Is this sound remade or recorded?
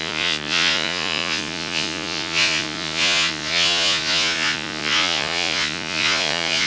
remade